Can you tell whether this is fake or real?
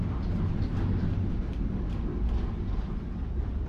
real